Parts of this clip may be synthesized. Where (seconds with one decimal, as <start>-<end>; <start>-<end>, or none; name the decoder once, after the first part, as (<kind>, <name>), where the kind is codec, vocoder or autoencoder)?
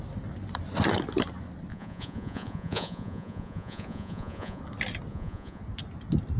1.7-4.6 (vocoder, Vocos); 5.1-5.6